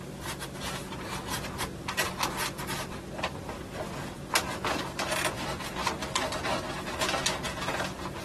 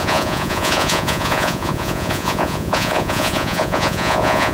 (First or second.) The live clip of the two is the first